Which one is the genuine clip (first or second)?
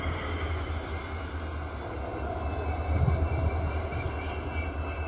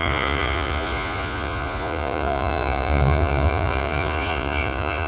first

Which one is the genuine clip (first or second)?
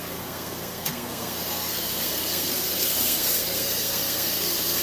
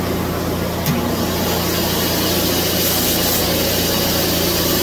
second